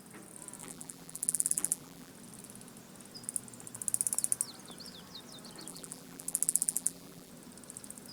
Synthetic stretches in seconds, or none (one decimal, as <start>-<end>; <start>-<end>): 0.6-2.1; 5.7-7.3